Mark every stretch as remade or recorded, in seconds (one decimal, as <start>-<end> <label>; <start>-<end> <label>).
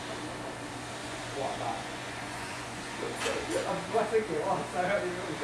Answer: 0.0-1.0 recorded; 1.0-3.7 remade; 3.7-5.4 recorded